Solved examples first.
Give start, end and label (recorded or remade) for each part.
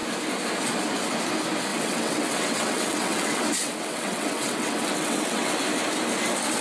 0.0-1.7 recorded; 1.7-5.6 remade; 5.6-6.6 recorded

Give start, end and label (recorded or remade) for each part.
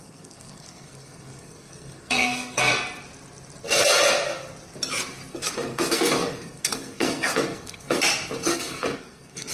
0.0-2.7 remade; 2.7-5.3 recorded; 5.3-8.0 remade; 8.0-8.5 recorded; 8.5-9.5 remade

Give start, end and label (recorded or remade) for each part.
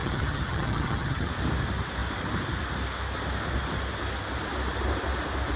0.0-1.3 remade; 1.3-5.6 recorded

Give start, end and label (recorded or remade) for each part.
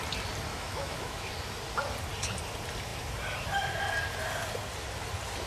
0.0-0.5 recorded; 0.5-1.3 remade; 1.3-5.5 recorded